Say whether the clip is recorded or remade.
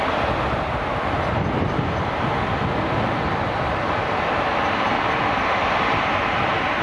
recorded